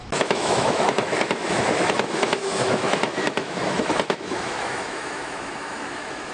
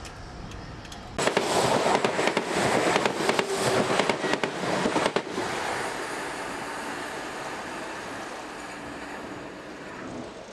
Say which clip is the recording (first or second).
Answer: second